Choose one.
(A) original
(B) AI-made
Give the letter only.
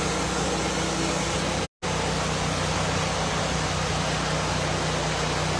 A